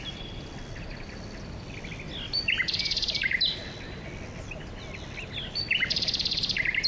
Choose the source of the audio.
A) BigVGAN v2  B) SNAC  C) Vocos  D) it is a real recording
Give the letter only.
D